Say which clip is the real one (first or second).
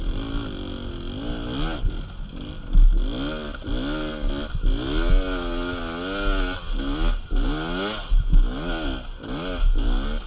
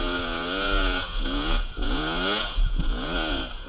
first